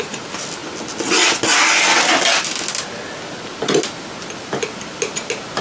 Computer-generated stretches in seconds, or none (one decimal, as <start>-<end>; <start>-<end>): none